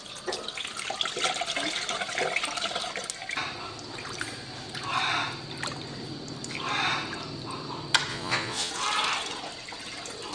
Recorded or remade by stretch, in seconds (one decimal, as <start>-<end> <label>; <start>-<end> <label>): 0.0-8.1 recorded; 8.1-8.7 remade; 8.7-10.3 recorded